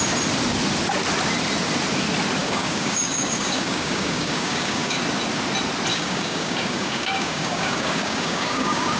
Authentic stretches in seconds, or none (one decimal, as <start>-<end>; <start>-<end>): 0.0-2.4; 5.0-5.9